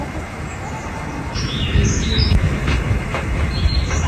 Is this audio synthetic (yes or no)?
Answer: yes